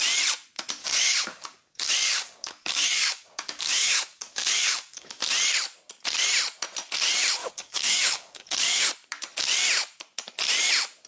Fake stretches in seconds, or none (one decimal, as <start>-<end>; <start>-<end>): 0.8-5.2; 7.4-8.9